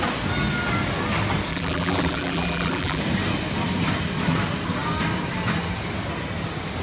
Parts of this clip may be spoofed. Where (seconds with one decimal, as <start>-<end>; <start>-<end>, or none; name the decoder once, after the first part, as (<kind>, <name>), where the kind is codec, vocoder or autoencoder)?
1.5-3.0 (vocoder, BigVGAN v2)